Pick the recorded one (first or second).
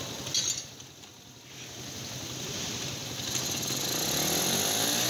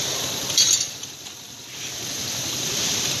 first